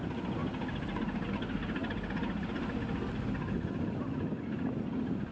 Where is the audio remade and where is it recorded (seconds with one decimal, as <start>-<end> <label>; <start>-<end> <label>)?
0.0-5.3 recorded